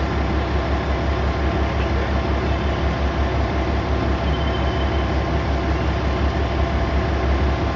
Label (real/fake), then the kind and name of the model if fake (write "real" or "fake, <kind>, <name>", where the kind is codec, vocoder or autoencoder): real